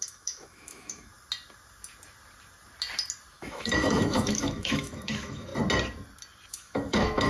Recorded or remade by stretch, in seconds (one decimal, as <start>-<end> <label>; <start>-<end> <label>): 0.0-1.1 remade; 1.1-3.3 recorded; 3.3-5.5 remade; 5.5-6.5 recorded; 6.5-7.3 remade